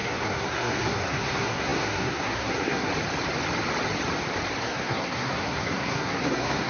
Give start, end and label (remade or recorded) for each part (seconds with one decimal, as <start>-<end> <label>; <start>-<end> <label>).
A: 0.0-2.9 remade; 2.9-4.6 recorded; 4.6-6.7 remade